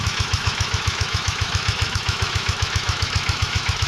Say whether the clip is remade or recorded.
remade